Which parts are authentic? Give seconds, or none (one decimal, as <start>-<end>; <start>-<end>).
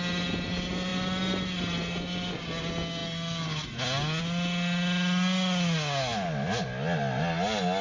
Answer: 0.0-7.8